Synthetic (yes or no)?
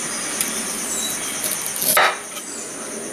no